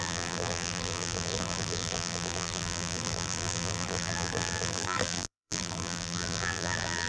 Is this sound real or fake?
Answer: fake